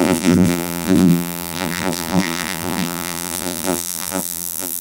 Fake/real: fake